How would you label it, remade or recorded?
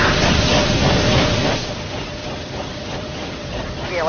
recorded